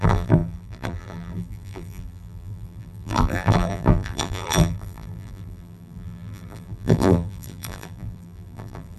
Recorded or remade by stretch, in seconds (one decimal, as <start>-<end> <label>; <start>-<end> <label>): 0.0-9.0 remade